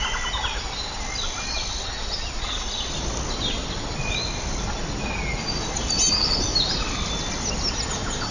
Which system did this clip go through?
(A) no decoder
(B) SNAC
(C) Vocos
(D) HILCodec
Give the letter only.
A